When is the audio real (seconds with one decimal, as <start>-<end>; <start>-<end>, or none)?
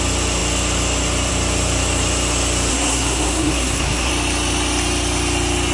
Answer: 0.0-2.7; 4.1-5.7